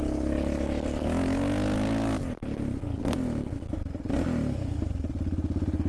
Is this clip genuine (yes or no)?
yes